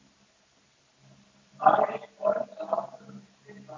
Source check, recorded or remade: recorded